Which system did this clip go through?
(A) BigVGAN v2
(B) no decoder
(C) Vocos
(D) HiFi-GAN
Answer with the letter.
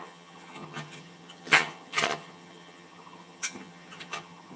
D